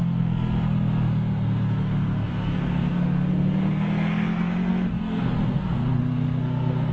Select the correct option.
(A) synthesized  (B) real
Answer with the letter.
A